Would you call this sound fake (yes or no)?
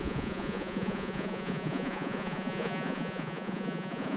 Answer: yes